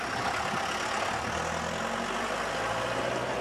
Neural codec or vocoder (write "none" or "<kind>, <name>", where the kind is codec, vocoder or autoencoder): none